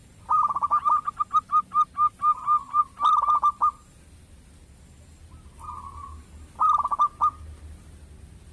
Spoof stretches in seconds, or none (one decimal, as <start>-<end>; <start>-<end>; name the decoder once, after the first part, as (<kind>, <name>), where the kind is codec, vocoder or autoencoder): none